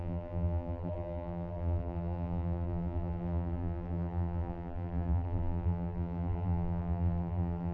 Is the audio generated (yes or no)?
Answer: yes